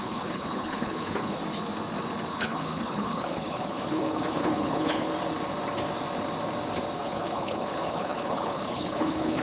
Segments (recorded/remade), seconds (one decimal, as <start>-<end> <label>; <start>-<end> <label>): 0.0-1.4 remade; 1.4-2.3 recorded; 2.3-5.1 remade; 5.1-7.0 recorded; 7.0-9.4 remade